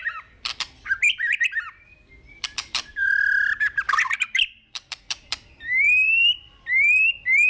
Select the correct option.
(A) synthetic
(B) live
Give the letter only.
A